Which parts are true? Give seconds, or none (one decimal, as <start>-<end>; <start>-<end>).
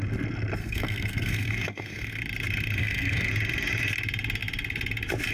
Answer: 0.0-0.6; 2.2-2.8; 3.3-5.3